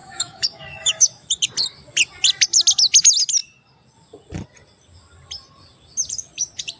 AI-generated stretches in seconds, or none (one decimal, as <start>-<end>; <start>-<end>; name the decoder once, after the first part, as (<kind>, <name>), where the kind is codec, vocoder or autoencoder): 0.0-1.3 (autoencoder, DAC-VAE)

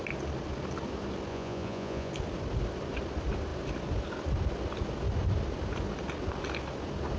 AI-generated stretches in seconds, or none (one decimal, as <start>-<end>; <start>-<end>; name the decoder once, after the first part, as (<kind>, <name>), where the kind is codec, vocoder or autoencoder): 1.3-2.1 (vocoder, Vocos)

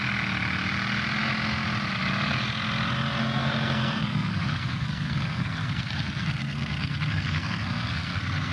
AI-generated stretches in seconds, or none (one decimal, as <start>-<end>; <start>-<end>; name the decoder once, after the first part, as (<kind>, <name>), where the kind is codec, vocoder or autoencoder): 3.2-8.5 (codec, SNAC)

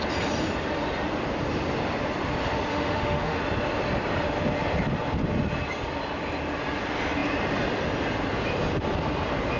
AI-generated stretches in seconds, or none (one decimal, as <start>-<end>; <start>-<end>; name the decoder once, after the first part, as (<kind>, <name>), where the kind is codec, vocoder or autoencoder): 2.7-3.4 (autoencoder, DAC-VAE)

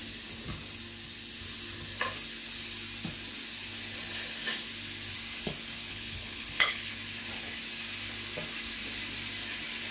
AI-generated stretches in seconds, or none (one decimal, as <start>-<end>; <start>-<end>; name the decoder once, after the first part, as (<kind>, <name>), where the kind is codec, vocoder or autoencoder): 5.9-6.9 (codec, HILCodec)

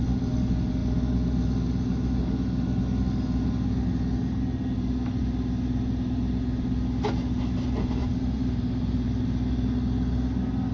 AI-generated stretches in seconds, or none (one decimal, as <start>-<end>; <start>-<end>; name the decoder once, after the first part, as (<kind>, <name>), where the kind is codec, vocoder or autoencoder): 8.0-9.1 (vocoder, BigVGAN v2)